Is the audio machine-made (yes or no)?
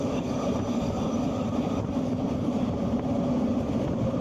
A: yes